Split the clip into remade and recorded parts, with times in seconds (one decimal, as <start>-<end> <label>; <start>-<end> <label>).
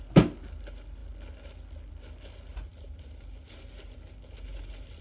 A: 0.0-5.0 recorded